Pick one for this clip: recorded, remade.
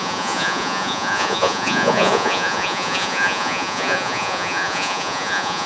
remade